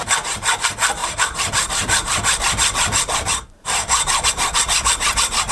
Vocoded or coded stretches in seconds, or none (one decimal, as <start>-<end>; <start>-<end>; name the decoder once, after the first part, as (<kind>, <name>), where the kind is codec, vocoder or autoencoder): 1.0-4.3 (vocoder, BigVGAN v2)